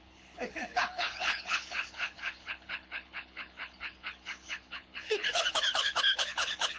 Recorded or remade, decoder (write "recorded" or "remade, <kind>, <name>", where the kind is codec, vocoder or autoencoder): remade, codec, HILCodec